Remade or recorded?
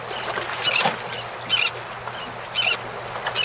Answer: recorded